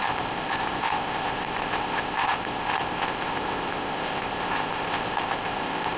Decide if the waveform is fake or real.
fake